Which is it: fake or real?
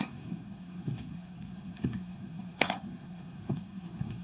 fake